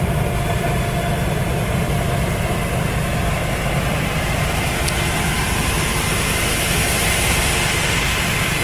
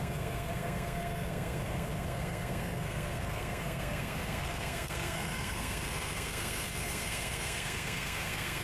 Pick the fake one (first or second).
second